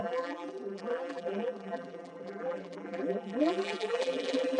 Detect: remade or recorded remade